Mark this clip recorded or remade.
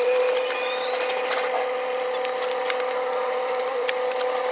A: recorded